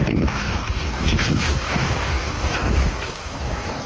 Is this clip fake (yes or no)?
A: yes